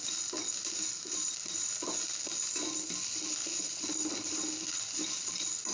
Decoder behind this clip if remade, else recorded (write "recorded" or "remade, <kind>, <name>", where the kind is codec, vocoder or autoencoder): recorded